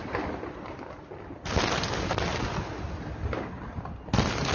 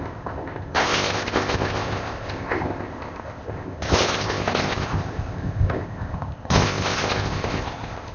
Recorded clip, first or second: first